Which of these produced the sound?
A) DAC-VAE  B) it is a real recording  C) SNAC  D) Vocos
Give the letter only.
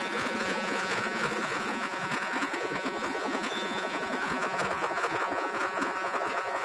D